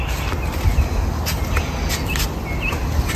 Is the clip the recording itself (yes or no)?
yes